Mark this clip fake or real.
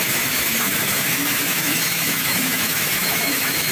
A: fake